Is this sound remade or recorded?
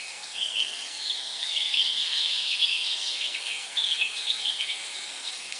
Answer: remade